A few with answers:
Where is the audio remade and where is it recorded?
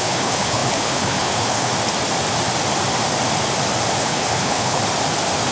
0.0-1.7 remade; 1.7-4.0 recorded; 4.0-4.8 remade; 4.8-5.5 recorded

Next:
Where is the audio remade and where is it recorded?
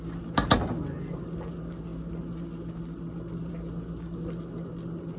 0.0-5.2 recorded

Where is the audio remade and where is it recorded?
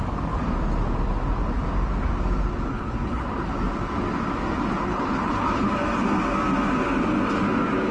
0.0-2.7 recorded; 2.7-3.5 remade; 3.5-4.8 recorded; 4.8-5.7 remade; 5.7-7.9 recorded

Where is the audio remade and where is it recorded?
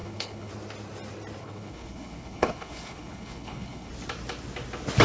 0.0-0.5 remade; 0.5-1.4 recorded; 1.4-3.9 remade; 3.9-5.0 recorded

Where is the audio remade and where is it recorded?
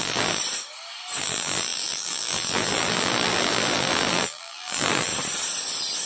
0.0-0.4 remade; 0.4-1.2 recorded; 1.2-5.1 remade; 5.1-6.1 recorded